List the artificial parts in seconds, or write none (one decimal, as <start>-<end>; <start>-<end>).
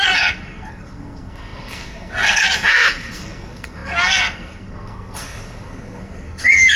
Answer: 0.0-6.8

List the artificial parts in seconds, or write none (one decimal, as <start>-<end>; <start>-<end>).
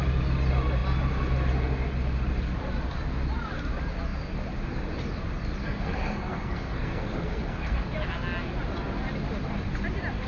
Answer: 5.6-7.8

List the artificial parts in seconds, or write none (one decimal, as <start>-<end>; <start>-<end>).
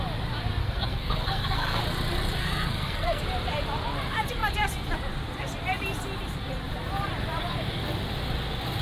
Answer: 0.6-1.8; 2.4-3.2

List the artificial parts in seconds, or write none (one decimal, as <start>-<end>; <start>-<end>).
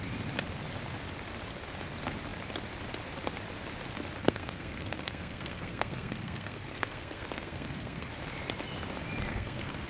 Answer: 4.2-8.1; 9.3-9.9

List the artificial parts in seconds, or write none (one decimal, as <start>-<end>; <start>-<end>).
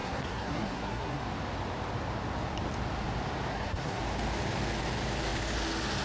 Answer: 0.0-1.2; 3.5-4.0